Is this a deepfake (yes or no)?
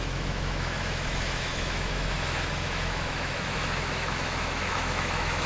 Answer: yes